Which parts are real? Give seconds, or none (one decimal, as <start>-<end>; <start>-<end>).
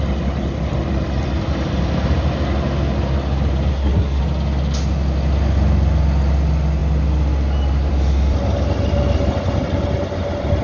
0.0-3.7; 4.2-10.6